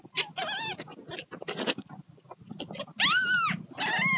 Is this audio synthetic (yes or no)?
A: no